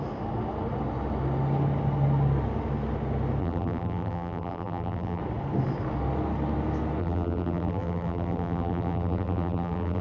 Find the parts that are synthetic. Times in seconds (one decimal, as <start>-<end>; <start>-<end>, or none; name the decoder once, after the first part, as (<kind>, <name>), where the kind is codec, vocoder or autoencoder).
3.4-5.2 (vocoder, BigVGAN v2); 7.0-10.0